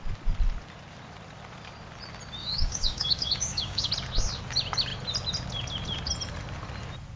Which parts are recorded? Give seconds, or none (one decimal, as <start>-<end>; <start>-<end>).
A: 0.0-2.4; 3.9-7.2